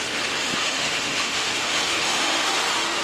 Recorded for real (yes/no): no